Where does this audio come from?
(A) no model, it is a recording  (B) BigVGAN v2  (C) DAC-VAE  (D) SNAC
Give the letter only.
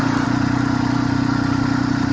A